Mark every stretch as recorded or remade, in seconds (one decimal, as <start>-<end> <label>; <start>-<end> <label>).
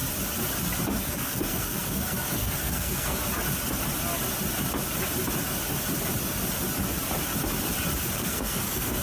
0.0-1.0 recorded; 1.0-3.2 remade; 3.2-8.0 recorded; 8.0-9.0 remade